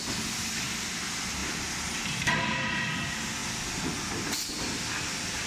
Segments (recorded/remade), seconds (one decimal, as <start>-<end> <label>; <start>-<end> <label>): 0.0-5.5 recorded